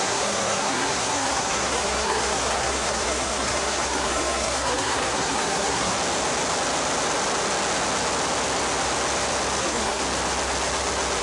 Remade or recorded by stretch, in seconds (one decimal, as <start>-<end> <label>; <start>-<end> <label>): 0.0-5.9 remade; 5.9-9.6 recorded; 9.6-10.0 remade; 10.0-11.2 recorded